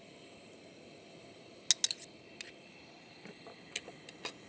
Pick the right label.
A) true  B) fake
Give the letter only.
A